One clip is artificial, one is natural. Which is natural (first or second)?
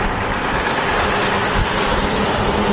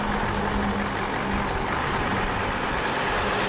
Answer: second